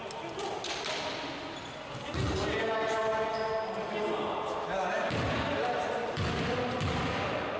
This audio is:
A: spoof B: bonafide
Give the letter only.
B